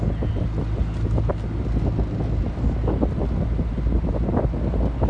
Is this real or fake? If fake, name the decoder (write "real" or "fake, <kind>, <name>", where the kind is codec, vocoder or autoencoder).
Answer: real